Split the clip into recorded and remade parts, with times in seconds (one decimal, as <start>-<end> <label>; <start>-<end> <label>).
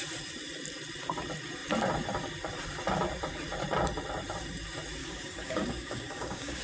0.0-5.0 recorded; 5.0-6.6 remade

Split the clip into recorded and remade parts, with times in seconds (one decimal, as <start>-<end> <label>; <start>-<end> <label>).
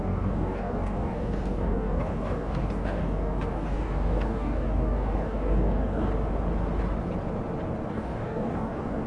0.0-6.1 remade; 6.1-7.9 recorded; 7.9-9.1 remade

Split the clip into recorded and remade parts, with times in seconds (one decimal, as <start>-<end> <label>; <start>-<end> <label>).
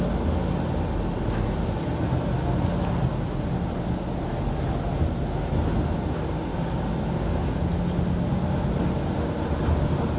0.0-6.5 recorded; 6.5-7.5 remade; 7.5-10.2 recorded